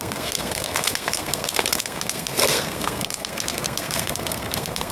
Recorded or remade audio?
remade